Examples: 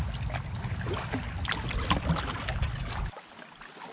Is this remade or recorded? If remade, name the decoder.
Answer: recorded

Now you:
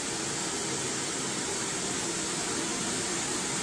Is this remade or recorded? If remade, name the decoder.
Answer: recorded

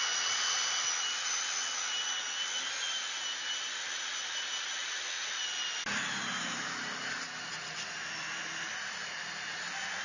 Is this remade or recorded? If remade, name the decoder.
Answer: recorded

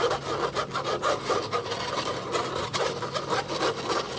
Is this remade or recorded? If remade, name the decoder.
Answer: recorded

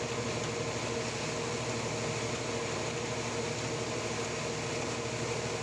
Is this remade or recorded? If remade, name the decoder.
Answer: recorded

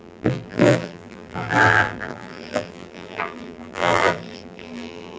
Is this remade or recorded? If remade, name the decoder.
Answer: remade, vocoder, BigVGAN v2